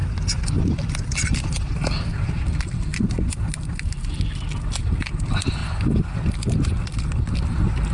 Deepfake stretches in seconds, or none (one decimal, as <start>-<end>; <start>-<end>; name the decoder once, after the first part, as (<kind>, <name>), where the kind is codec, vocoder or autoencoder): none